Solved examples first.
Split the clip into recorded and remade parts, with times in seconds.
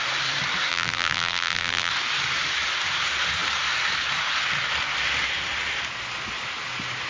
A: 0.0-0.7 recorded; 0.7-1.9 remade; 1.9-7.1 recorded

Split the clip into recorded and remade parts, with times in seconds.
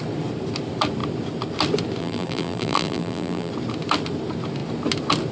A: 0.0-2.0 recorded; 2.0-3.5 remade; 3.5-5.3 recorded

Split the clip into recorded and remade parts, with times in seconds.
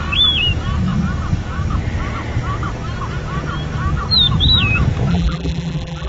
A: 0.0-5.1 recorded; 5.1-6.1 remade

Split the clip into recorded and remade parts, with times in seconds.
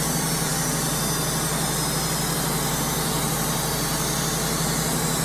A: 0.0-5.2 recorded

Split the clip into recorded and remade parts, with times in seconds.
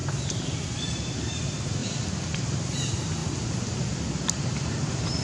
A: 0.0-0.9 recorded; 0.9-3.2 remade; 3.2-4.1 recorded; 4.1-5.2 remade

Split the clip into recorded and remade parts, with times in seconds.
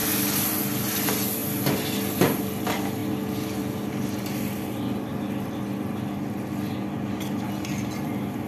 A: 0.0-8.5 recorded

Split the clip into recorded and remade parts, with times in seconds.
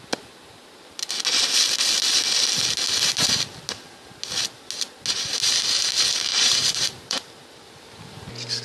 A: 0.0-6.3 recorded; 6.3-7.3 remade; 7.3-8.6 recorded